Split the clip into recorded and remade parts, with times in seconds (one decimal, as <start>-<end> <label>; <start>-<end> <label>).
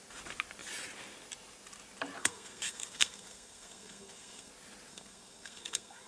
0.0-2.2 recorded; 2.2-4.5 remade; 4.5-4.9 recorded; 4.9-6.1 remade